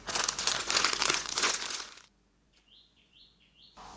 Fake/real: fake